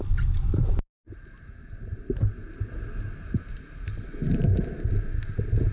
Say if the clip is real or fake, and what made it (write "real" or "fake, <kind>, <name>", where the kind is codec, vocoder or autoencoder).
real